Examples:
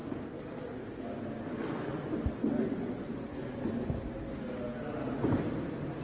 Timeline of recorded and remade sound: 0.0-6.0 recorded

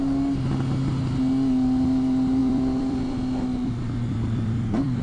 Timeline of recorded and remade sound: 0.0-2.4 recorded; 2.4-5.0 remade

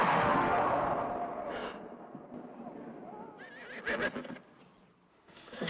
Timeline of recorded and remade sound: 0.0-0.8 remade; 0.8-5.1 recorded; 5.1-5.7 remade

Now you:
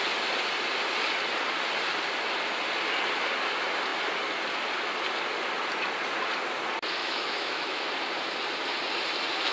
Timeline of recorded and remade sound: 0.0-7.0 recorded; 7.0-7.8 remade; 7.8-9.5 recorded

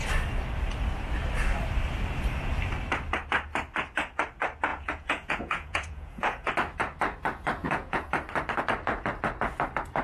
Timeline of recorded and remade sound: 0.0-4.7 recorded; 4.7-6.5 remade; 6.5-7.6 recorded; 7.6-8.1 remade; 8.1-10.0 recorded

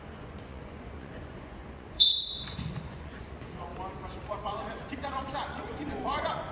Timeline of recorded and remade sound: 0.0-3.7 remade; 3.7-4.3 recorded; 4.3-6.5 remade